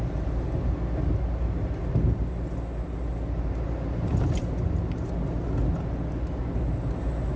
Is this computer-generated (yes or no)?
no